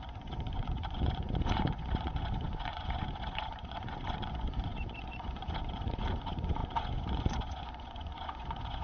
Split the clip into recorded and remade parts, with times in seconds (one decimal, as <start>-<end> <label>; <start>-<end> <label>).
0.0-8.8 remade